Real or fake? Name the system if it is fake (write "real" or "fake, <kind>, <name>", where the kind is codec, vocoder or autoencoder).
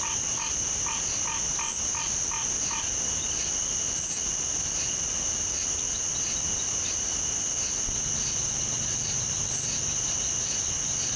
real